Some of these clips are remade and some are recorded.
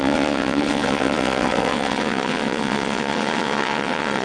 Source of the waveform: remade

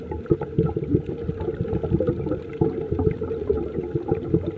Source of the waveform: recorded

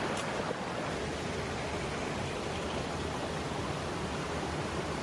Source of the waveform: recorded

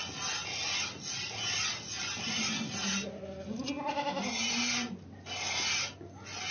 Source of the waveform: recorded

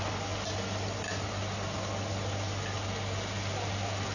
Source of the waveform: recorded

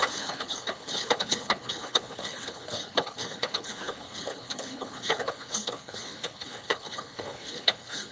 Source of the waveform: remade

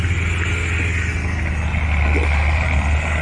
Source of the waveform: recorded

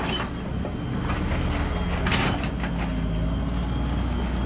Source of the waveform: recorded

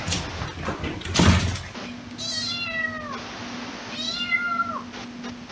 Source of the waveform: recorded